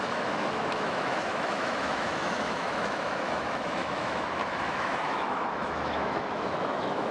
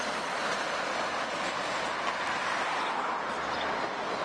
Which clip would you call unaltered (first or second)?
second